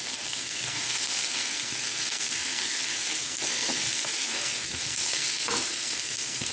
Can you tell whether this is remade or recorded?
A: remade